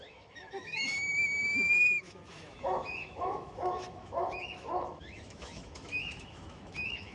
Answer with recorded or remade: remade